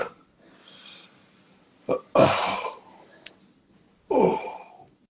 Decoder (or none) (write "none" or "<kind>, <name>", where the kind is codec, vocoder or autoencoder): none